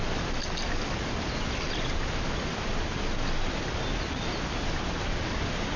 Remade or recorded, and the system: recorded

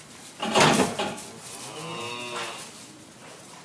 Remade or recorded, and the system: recorded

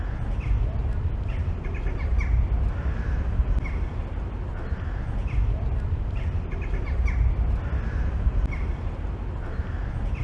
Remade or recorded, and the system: recorded